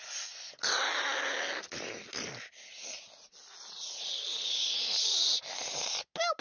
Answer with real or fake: real